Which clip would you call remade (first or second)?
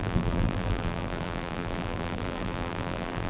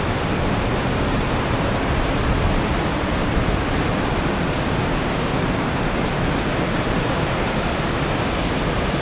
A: first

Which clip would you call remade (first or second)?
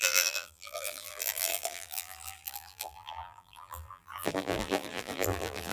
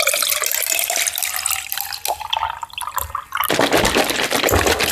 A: first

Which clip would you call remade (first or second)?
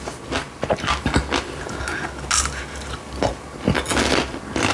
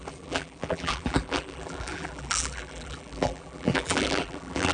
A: second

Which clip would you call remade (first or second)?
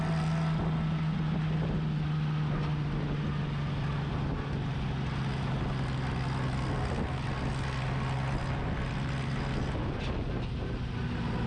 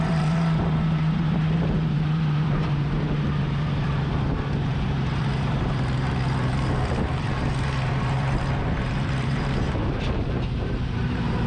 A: second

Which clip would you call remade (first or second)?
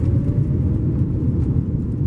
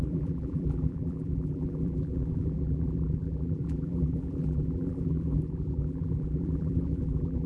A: second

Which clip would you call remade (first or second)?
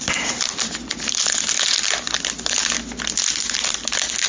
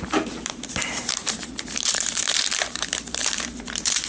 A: second